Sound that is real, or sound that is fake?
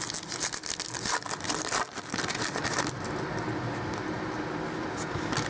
real